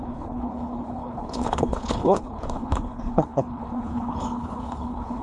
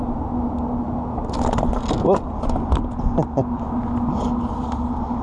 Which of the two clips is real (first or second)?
second